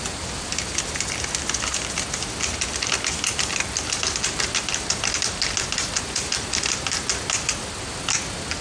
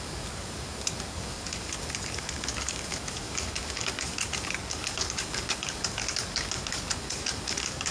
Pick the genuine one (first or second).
first